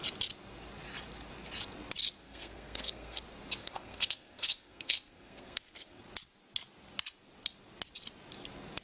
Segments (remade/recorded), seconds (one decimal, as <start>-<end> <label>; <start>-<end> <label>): 0.0-2.2 recorded; 2.2-3.2 remade; 3.2-3.6 recorded; 3.6-6.0 remade; 6.0-8.8 recorded